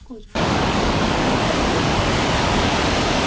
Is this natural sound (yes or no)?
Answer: no